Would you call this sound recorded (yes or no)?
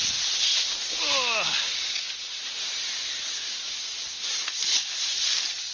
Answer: yes